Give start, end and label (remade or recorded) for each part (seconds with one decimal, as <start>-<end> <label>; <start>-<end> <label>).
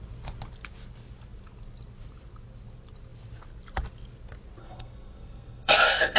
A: 0.0-4.6 recorded; 4.6-6.2 remade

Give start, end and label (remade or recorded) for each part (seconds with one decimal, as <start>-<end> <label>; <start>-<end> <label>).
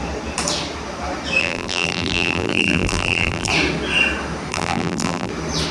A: 0.0-1.4 recorded; 1.4-3.5 remade; 3.5-4.5 recorded; 4.5-5.3 remade; 5.3-5.7 recorded